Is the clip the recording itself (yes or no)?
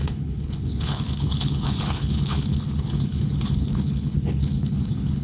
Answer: no